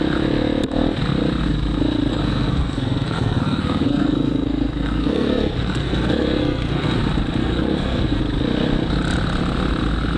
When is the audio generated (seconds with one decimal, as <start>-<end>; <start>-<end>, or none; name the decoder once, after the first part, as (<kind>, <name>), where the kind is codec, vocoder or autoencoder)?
2.1-7.0 (codec, SNAC); 7.4-8.2